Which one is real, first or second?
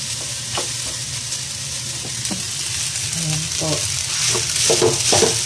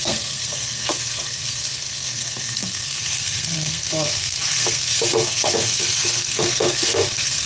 first